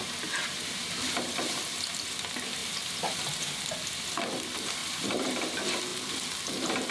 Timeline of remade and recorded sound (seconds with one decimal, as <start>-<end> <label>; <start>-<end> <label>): 0.0-0.4 recorded; 0.4-1.6 remade; 1.6-4.8 recorded; 4.8-5.4 remade; 5.4-6.9 recorded